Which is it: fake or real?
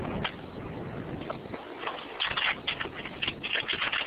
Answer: real